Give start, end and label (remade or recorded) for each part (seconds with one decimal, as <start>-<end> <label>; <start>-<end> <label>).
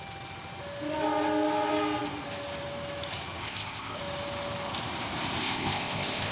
0.0-3.4 recorded; 3.4-4.0 remade; 4.0-5.4 recorded; 5.4-6.3 remade